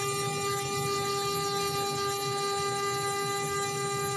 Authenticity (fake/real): real